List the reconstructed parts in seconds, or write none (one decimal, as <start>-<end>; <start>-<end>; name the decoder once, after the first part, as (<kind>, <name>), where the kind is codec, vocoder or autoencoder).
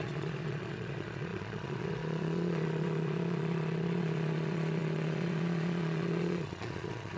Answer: 0.0-7.2 (vocoder, Vocos)